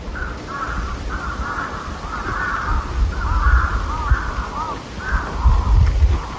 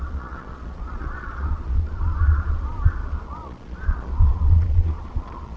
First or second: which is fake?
second